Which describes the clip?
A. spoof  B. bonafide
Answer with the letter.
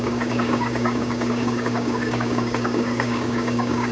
A